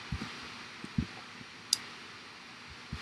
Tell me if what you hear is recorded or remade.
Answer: recorded